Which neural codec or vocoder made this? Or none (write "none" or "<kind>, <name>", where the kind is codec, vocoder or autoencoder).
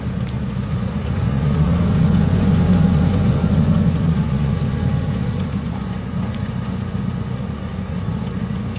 vocoder, Vocos